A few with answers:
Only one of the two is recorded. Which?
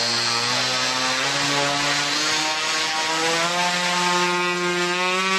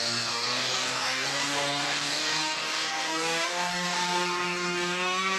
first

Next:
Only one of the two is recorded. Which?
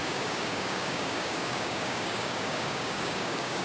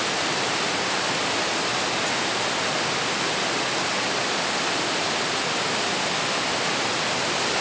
second